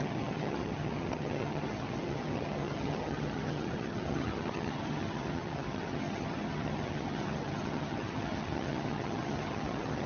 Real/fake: fake